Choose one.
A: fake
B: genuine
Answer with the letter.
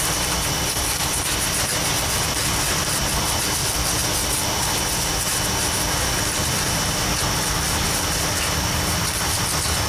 B